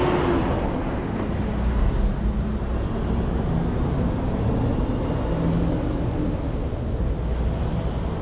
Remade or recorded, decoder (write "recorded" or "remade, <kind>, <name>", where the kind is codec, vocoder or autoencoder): recorded